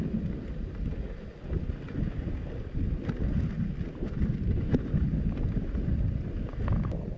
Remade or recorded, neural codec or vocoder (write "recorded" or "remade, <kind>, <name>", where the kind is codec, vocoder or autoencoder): recorded